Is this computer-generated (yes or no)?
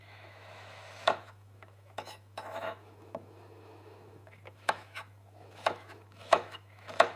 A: yes